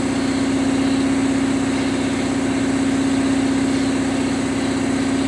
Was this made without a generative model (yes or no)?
yes